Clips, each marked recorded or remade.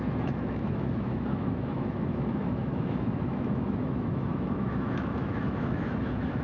remade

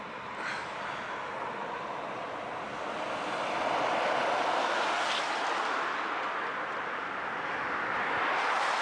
recorded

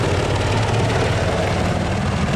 recorded